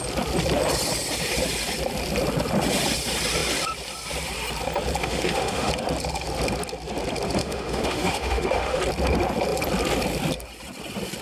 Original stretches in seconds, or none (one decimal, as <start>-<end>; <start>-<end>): 0.0-5.0; 5.7-7.4; 8.8-11.2